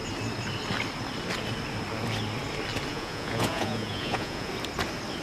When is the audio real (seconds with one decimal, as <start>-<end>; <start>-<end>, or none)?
0.0-2.9; 4.5-5.2